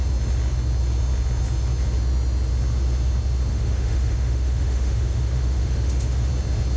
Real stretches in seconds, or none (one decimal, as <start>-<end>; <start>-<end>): 0.0-3.5; 6.3-6.8